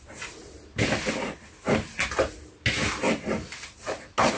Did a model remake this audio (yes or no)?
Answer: no